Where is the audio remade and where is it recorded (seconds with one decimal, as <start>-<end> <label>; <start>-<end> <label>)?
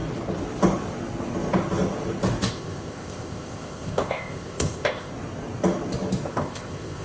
0.0-2.5 recorded; 2.5-5.1 remade; 5.1-6.3 recorded; 6.3-7.0 remade